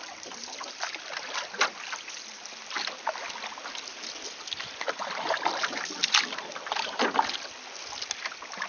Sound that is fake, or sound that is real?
real